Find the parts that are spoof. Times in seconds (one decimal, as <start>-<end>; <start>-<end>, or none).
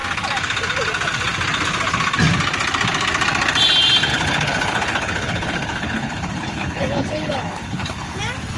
4.1-8.2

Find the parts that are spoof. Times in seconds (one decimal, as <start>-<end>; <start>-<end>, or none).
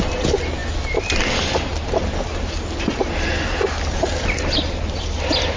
none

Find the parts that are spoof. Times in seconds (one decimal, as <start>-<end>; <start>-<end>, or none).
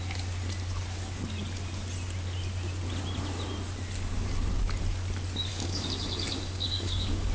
5.5-7.3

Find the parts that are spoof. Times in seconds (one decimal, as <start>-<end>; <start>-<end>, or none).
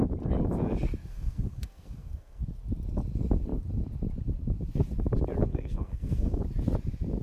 1.1-2.4; 5.5-6.4